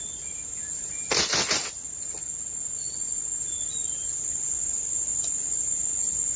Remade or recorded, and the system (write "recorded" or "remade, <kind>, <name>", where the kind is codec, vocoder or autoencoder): recorded